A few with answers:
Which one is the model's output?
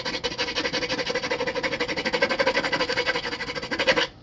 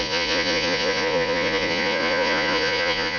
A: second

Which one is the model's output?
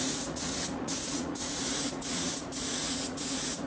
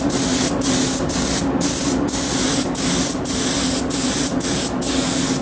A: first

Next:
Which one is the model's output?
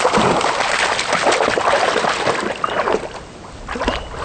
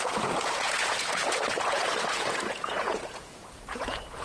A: second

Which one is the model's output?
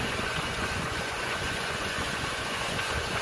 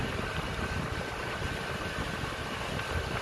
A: first